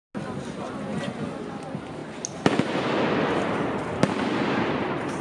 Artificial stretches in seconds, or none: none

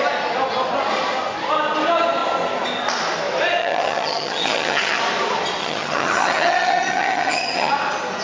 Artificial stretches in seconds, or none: 3.6-5.0 (vocoder, HiFi-GAN); 5.6-7.7

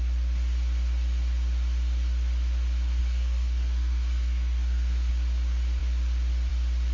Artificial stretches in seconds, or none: 3.0-5.1 (codec, SNAC)

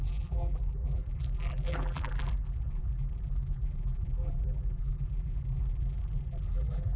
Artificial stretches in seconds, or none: 0.0-7.0 (vocoder, BigVGAN v2)

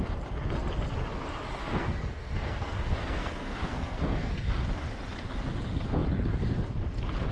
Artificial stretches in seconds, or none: 1.6-4.4 (codec, SNAC)

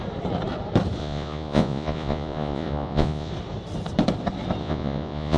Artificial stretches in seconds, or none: 1.0-3.3 (vocoder, Vocos); 4.6-5.4